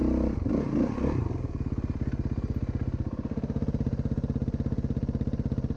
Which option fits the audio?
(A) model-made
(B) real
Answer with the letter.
B